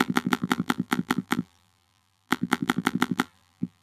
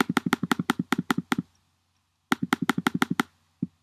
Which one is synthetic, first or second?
first